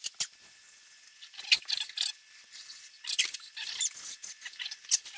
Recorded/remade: recorded